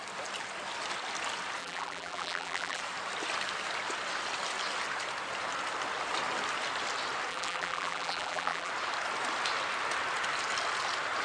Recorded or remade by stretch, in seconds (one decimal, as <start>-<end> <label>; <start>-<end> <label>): 0.0-1.6 recorded; 1.6-2.8 remade; 2.8-7.3 recorded; 7.3-8.7 remade; 8.7-11.2 recorded